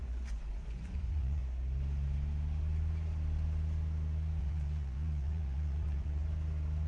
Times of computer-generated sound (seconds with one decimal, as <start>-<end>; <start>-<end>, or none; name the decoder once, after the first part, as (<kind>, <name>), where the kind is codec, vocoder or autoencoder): 0.0-1.4 (vocoder, Vocos); 4.4-6.2